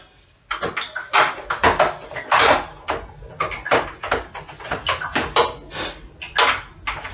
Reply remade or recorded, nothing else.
recorded